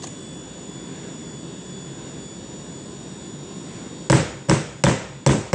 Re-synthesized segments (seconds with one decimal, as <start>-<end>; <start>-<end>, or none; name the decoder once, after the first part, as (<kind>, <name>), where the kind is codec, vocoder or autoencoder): none